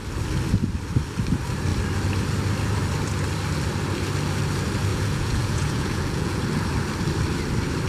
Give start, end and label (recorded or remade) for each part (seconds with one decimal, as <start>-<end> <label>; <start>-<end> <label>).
0.0-4.9 recorded; 4.9-6.4 remade; 6.4-7.9 recorded